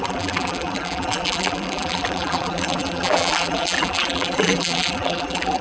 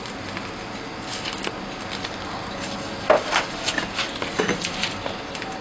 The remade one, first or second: first